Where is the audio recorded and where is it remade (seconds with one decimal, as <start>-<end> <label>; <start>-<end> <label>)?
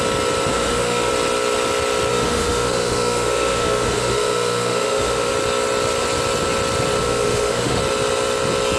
0.0-0.5 recorded; 0.5-1.1 remade; 1.1-2.1 recorded; 2.1-5.3 remade; 5.3-7.0 recorded; 7.0-7.8 remade; 7.8-8.8 recorded